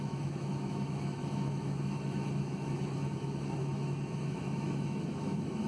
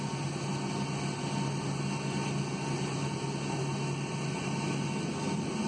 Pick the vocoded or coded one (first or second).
first